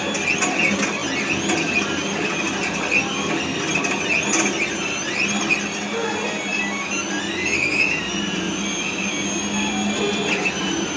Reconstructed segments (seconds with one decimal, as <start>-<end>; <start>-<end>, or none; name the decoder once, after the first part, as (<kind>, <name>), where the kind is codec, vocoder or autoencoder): none